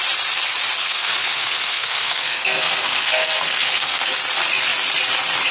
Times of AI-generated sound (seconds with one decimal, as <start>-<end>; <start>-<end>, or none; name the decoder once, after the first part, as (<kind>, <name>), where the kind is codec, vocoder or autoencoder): 0.8-4.1 (codec, SNAC)